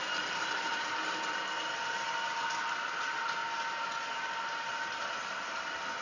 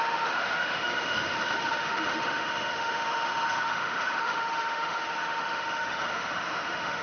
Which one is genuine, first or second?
first